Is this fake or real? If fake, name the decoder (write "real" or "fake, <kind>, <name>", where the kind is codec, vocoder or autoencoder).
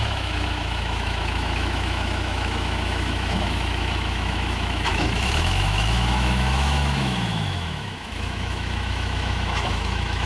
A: fake, autoencoder, DAC-VAE